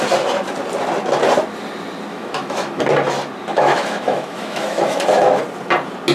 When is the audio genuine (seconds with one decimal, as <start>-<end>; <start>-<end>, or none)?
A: 0.0-2.1; 2.8-3.5; 5.4-6.1